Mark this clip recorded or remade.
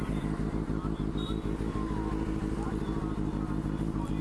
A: recorded